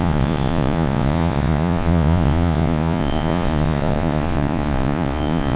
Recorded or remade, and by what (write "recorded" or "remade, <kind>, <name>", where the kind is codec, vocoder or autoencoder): remade, vocoder, Vocos